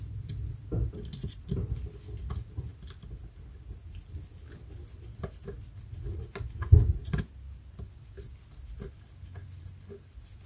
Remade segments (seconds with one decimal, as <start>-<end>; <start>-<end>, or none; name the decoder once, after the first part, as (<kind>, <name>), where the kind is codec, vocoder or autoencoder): none